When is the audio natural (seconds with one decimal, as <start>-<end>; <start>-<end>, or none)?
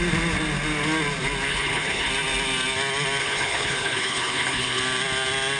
0.0-1.5; 2.1-3.2; 4.8-5.6